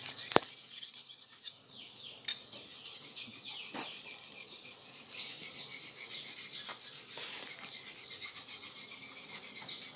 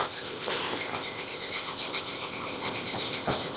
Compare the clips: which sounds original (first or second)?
first